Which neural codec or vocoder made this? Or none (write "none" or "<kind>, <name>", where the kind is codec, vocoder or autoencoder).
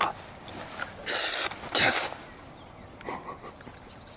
none